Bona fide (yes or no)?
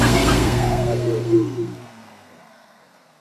no